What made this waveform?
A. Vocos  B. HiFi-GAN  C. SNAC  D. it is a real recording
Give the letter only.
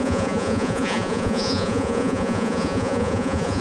A